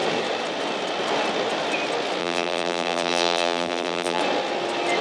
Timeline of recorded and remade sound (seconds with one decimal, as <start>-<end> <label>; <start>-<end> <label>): 0.0-2.2 recorded; 2.2-4.2 remade; 4.2-5.0 recorded